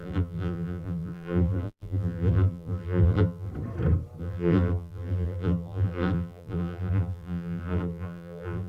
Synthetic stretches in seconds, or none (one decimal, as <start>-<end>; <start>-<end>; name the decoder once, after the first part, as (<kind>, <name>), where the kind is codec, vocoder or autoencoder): 0.0-3.5 (vocoder, BigVGAN v2); 4.2-8.7